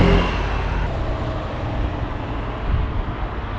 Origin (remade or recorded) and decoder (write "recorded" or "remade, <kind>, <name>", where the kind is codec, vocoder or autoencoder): recorded